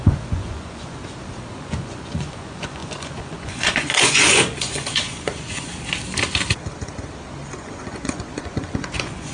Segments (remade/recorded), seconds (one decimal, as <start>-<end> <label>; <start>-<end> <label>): 0.0-1.0 remade; 1.0-1.5 recorded; 1.5-5.7 remade; 5.7-7.6 recorded; 7.6-9.3 remade